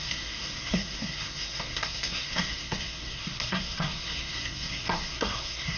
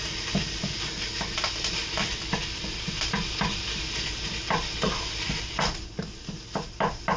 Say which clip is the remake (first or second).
first